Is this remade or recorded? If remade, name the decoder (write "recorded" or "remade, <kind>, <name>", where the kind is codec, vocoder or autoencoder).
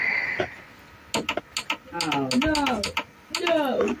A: recorded